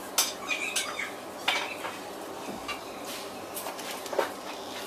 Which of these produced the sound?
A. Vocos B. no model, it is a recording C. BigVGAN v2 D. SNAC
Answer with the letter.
B